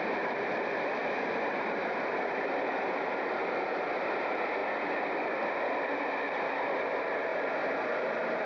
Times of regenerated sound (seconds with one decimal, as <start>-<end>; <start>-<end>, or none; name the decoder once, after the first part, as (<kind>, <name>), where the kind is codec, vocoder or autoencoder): none